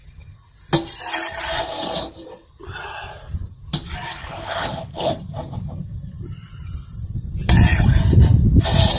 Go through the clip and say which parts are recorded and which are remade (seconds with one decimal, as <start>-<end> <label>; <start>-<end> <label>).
0.0-4.2 recorded; 4.2-5.1 remade; 5.1-9.0 recorded